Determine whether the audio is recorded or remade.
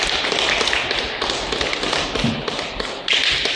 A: recorded